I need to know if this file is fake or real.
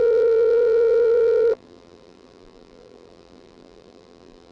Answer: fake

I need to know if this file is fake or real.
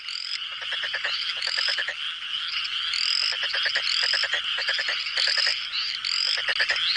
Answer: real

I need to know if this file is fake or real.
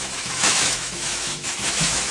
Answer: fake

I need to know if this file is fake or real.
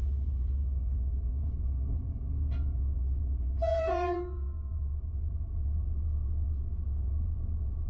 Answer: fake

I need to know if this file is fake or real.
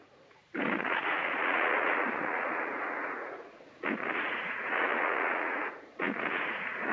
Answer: fake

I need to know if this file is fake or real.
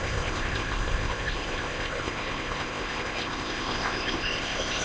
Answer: fake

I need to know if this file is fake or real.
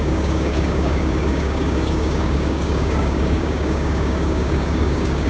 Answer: fake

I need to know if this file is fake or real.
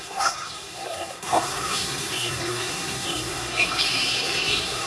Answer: fake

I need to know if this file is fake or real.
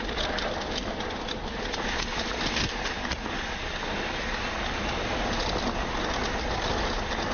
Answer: real